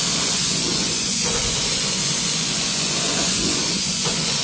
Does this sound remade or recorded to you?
remade